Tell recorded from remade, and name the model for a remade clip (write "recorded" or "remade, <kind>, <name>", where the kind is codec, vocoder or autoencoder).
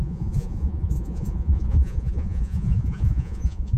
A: remade, vocoder, Vocos